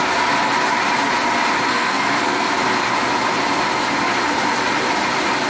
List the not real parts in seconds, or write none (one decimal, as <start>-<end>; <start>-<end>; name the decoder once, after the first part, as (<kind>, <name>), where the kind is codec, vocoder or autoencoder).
1.7-2.5 (codec, SNAC)